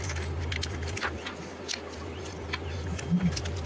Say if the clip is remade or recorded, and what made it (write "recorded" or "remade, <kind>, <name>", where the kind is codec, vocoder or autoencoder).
recorded